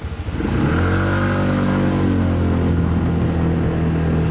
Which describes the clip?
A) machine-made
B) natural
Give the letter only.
B